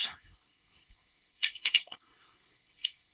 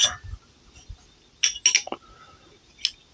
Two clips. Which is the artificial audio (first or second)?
first